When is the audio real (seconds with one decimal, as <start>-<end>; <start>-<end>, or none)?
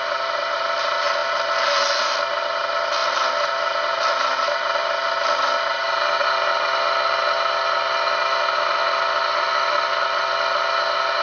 0.0-11.2